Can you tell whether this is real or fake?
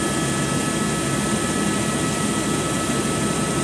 real